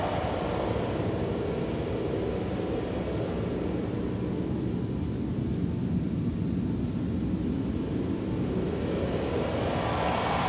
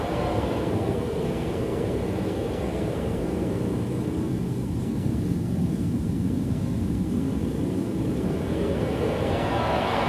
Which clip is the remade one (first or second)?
second